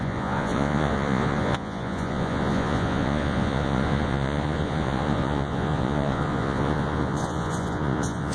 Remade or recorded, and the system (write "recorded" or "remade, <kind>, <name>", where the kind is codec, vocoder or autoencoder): remade, vocoder, Vocos